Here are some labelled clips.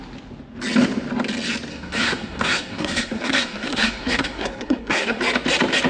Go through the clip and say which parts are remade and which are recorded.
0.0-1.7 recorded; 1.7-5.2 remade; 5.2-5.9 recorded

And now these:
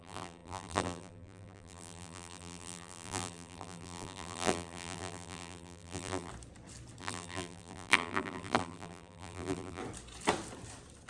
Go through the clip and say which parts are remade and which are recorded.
0.0-6.3 remade; 6.3-7.0 recorded; 7.0-9.8 remade; 9.8-11.1 recorded

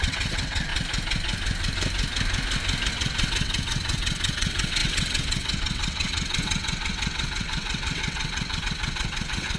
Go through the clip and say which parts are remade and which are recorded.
0.0-0.7 remade; 0.7-2.9 recorded; 2.9-9.6 remade

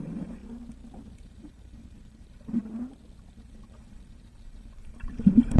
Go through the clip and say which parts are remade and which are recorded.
0.0-0.4 remade; 0.4-1.1 recorded; 1.1-2.6 remade; 2.6-3.3 recorded; 3.3-5.6 remade

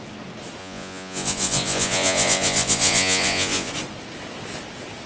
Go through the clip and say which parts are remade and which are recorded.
0.0-0.6 recorded; 0.6-3.7 remade; 3.7-5.1 recorded

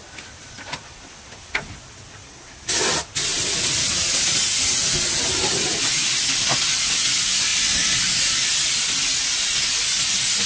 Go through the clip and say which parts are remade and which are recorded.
0.0-10.5 recorded

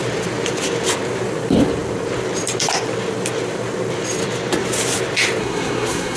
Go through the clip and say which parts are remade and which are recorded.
0.0-5.4 recorded; 5.4-6.2 remade

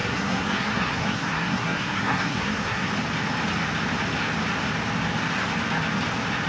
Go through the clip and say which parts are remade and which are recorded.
0.0-2.9 remade; 2.9-6.5 recorded